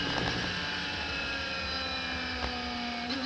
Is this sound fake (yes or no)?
no